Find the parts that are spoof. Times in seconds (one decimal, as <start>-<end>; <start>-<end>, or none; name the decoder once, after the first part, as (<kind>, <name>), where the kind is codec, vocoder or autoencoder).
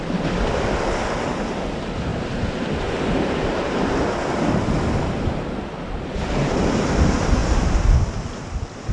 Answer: none